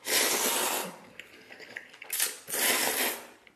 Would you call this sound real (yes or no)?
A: yes